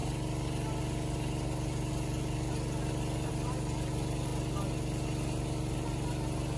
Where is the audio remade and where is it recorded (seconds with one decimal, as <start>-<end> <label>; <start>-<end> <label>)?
0.0-6.6 recorded